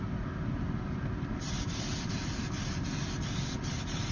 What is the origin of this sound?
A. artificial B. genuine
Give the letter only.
B